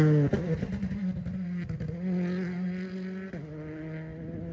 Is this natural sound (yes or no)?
yes